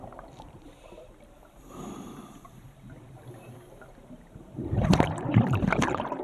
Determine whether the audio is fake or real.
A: fake